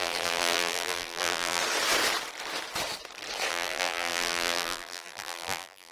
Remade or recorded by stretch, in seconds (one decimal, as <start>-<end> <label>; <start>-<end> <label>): 0.0-1.6 remade; 1.6-3.5 recorded; 3.5-5.9 remade